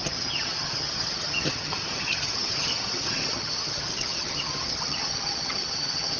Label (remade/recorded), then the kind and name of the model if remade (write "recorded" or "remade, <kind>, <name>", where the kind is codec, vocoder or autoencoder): remade, vocoder, HiFi-GAN